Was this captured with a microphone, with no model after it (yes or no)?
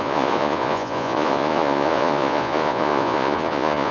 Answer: no